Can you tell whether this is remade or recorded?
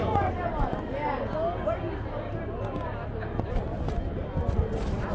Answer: recorded